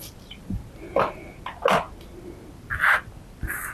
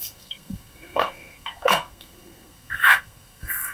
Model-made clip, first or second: second